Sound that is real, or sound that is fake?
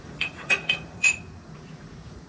fake